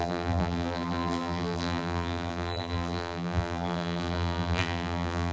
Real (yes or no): no